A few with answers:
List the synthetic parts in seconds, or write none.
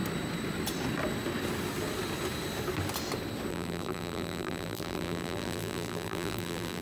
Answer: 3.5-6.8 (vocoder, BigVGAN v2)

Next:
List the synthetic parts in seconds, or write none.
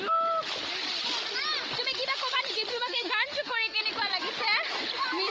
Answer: 2.7-3.8 (autoencoder, DAC-VAE)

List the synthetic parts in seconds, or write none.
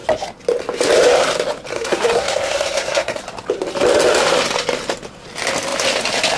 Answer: 1.7-3.2 (codec, SNAC)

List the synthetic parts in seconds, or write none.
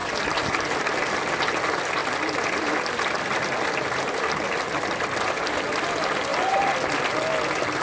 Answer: none